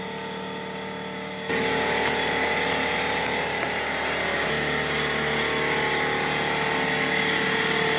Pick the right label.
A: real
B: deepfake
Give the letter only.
A